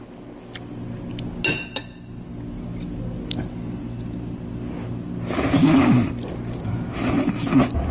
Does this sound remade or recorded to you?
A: recorded